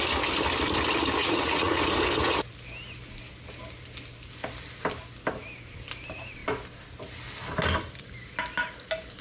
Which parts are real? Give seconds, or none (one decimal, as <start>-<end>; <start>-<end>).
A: 0.0-1.2; 1.8-9.2